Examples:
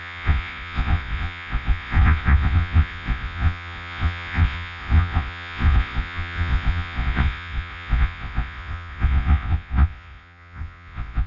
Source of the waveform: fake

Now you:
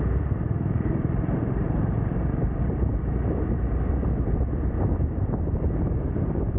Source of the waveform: fake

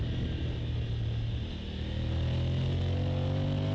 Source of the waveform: real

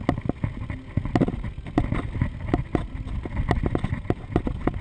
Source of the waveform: real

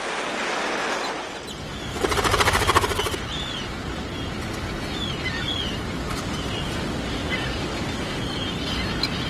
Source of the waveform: real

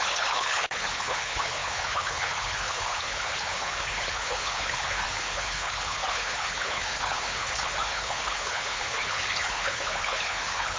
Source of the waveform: fake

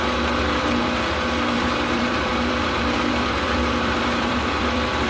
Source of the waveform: fake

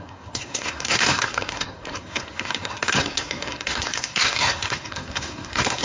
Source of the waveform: fake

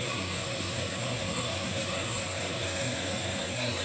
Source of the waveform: fake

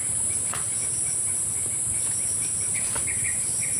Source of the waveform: real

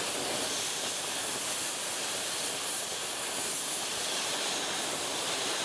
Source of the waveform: real